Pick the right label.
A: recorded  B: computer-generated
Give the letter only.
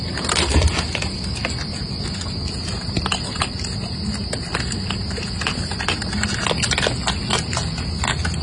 A